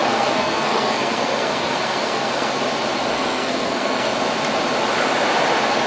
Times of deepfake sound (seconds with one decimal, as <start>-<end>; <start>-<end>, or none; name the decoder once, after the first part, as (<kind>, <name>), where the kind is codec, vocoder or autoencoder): 0.0-2.6 (codec, SNAC); 3.1-4.1